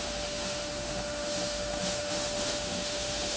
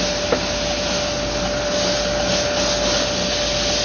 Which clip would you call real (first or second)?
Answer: second